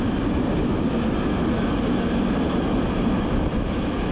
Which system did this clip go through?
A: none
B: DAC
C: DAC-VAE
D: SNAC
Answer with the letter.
A